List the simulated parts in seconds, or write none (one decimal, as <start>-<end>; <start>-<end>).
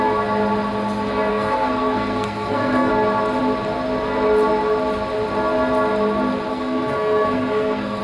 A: 1.3-2.9; 6.5-8.0